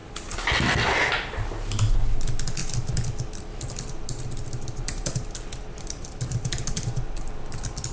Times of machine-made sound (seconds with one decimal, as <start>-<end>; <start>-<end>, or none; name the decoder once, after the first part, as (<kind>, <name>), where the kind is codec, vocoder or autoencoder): none